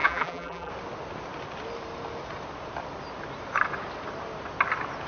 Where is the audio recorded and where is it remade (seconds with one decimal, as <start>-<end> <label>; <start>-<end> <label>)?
0.0-0.7 remade; 0.7-5.1 recorded